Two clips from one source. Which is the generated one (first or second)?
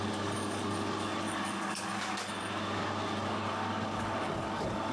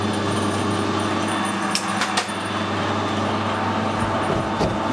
first